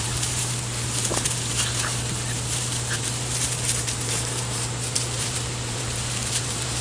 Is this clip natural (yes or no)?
no